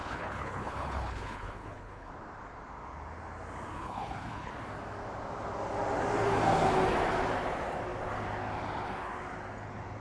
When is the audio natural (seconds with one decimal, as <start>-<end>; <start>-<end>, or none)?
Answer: 2.1-3.7; 4.5-10.0